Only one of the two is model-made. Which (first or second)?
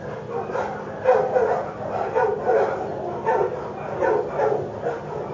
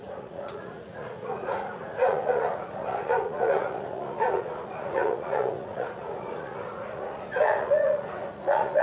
second